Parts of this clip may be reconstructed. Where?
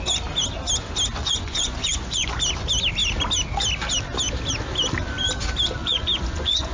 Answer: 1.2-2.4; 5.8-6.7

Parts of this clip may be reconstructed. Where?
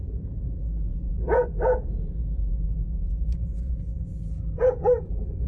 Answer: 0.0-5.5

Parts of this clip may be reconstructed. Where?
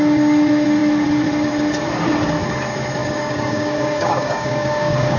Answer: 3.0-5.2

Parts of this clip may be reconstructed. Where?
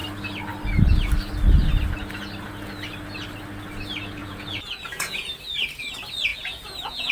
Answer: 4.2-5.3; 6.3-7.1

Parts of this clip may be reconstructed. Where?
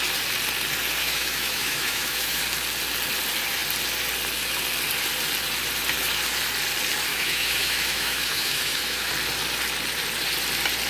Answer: 1.0-2.4; 7.1-9.1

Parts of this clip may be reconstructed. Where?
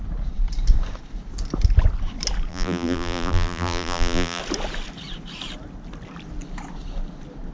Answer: 2.5-4.4